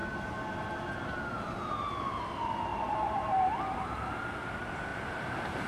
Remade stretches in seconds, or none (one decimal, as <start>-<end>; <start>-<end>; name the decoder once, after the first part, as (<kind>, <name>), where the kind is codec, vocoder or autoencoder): 2.7-4.2 (vocoder, BigVGAN v2); 4.9-5.7